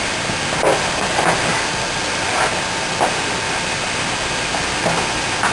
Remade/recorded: recorded